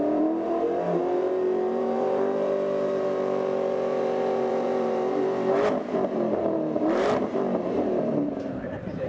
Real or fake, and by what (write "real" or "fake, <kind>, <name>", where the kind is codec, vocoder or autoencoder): fake, vocoder, BigVGAN v2